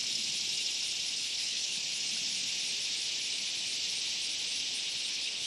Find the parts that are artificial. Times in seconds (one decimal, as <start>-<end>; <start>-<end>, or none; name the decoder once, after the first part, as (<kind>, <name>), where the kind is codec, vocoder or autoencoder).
1.2-1.8 (codec, HILCodec); 5.1-5.5